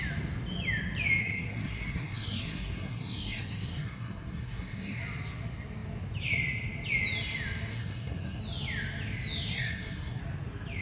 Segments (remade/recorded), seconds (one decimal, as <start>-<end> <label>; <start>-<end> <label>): 0.0-1.2 recorded; 1.2-5.0 remade; 5.0-7.7 recorded; 7.7-8.4 remade; 8.4-9.5 recorded; 9.5-10.2 remade; 10.2-10.8 recorded